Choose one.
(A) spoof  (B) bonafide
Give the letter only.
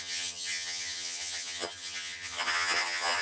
A